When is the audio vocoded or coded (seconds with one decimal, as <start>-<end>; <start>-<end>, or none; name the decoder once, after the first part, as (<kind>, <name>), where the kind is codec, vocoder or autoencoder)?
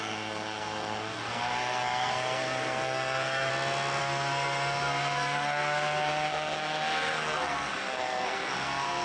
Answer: 0.0-3.5 (codec, SNAC); 4.0-9.0